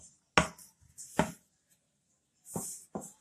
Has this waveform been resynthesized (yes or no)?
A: no